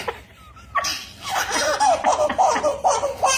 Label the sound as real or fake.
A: fake